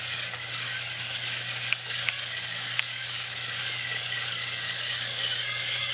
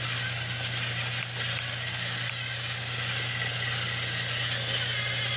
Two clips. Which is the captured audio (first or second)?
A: second